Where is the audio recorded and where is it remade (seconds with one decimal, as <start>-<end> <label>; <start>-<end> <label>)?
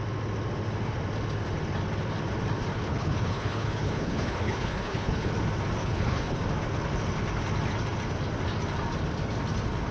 0.0-2.7 recorded; 2.7-5.3 remade; 5.3-5.8 recorded; 5.8-6.4 remade; 6.4-9.9 recorded